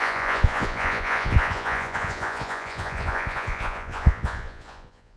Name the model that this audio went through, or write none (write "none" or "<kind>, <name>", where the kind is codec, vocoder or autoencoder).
vocoder, Vocos